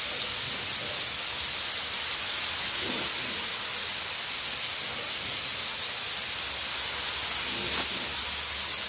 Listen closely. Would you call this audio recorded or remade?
recorded